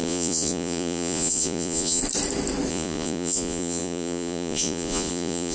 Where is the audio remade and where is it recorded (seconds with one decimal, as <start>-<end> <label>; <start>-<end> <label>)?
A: 0.0-2.0 remade; 2.0-2.7 recorded; 2.7-5.5 remade